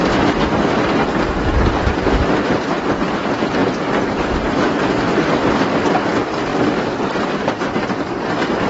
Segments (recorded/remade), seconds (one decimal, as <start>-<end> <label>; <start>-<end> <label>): 0.0-6.5 recorded; 6.5-7.5 remade; 7.5-8.7 recorded